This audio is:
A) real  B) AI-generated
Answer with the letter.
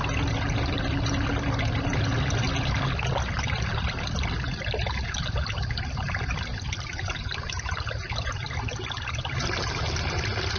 A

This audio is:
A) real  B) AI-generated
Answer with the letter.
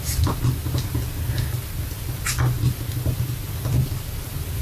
A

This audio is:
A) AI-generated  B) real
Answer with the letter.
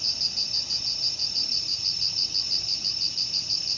B